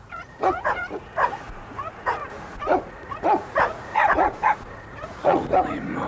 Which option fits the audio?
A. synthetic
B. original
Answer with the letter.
A